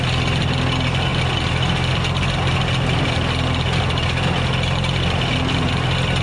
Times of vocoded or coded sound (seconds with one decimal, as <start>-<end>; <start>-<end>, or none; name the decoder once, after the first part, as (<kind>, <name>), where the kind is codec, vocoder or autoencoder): none